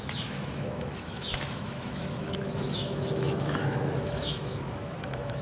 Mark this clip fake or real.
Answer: fake